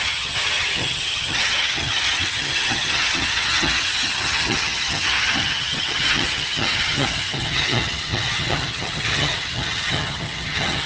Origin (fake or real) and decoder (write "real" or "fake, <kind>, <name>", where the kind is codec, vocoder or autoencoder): fake, vocoder, HiFi-GAN